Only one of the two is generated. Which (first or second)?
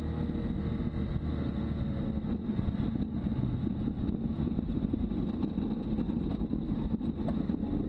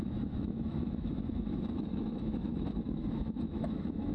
second